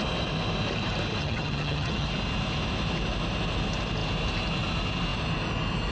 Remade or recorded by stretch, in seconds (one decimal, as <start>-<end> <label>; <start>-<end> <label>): 0.0-1.2 recorded; 1.2-2.1 remade; 2.1-5.9 recorded

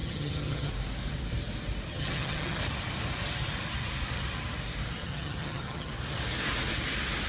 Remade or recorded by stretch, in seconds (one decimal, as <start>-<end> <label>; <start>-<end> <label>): 0.0-0.7 remade; 0.7-1.9 recorded; 1.9-2.6 remade; 2.6-5.0 recorded; 5.0-5.9 remade; 5.9-7.3 recorded

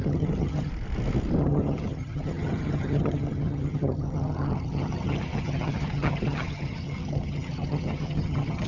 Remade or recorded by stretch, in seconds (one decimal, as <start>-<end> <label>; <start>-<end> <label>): 0.0-0.7 remade; 0.7-1.4 recorded; 1.4-8.7 remade